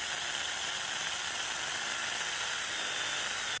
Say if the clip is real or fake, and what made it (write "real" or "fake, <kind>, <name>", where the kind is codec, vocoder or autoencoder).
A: real